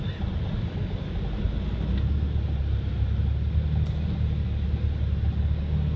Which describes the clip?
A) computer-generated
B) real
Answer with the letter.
B